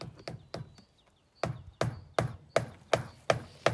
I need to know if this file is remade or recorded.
recorded